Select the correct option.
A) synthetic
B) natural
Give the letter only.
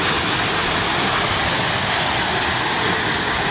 B